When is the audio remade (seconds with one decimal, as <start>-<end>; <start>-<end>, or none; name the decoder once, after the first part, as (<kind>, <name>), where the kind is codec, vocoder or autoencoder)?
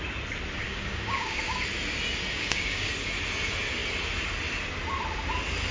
0.6-1.4 (codec, DAC); 2.3-2.9